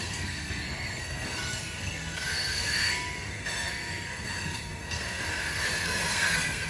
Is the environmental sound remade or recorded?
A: remade